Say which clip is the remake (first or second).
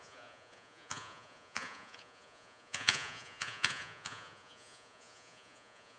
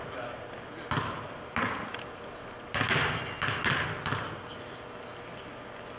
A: first